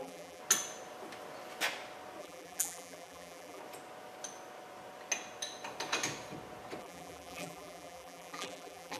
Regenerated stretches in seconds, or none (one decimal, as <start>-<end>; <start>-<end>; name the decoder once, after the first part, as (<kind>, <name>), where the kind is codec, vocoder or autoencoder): 0.0-0.4 (vocoder, BigVGAN v2); 2.2-3.6; 6.8-9.0